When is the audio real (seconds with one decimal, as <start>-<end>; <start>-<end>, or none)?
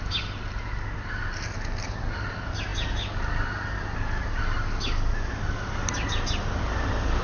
0.0-7.2